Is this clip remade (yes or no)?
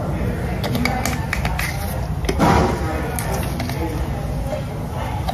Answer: no